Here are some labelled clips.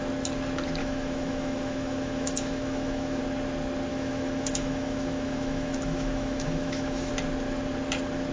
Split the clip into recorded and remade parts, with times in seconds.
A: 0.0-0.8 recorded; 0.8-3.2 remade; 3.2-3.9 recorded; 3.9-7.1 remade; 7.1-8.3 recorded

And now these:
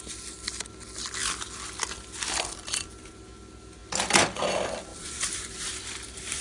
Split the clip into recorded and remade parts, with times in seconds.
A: 0.0-4.9 recorded; 4.9-6.4 remade

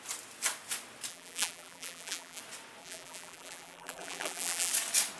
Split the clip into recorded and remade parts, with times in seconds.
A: 0.0-1.1 recorded; 1.1-2.4 remade; 2.4-2.8 recorded; 2.8-4.7 remade; 4.7-5.2 recorded

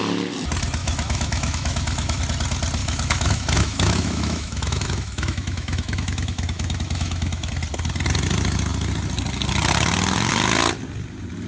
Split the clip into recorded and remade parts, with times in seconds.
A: 0.0-0.8 recorded; 0.8-2.2 remade; 2.2-2.8 recorded; 2.8-7.5 remade; 7.5-11.5 recorded

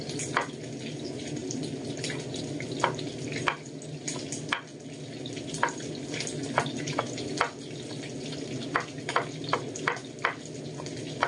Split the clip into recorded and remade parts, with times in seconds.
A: 0.0-11.3 recorded